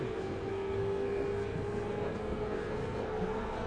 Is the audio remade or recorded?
remade